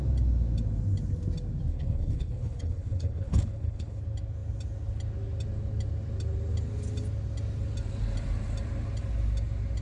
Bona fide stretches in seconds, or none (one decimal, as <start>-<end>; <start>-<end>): 0.0-1.7; 4.0-9.8